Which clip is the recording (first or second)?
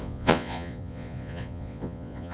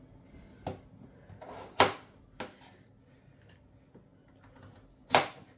second